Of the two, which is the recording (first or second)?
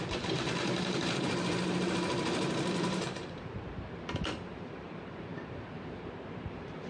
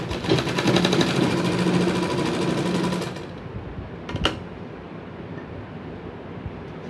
second